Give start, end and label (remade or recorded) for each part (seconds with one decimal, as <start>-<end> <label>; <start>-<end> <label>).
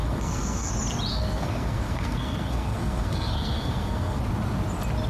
0.0-0.7 remade; 0.7-1.1 recorded; 1.1-4.2 remade; 4.2-5.1 recorded